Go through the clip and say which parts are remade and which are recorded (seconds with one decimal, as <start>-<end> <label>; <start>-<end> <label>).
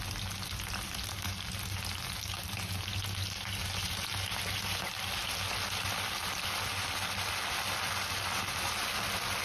0.0-9.4 recorded